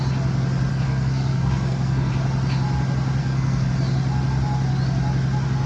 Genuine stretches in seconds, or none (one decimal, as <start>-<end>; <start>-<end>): 0.0-0.7; 2.1-3.2; 3.7-5.7